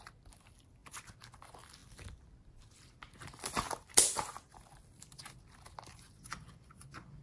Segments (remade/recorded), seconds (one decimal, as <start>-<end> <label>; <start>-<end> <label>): 0.0-5.9 recorded; 5.9-7.2 remade